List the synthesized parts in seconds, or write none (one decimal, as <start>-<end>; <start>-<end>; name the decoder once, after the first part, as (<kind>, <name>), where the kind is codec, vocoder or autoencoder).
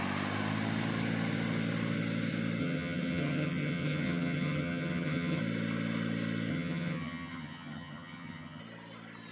2.6-5.4 (vocoder, HiFi-GAN); 6.5-8.6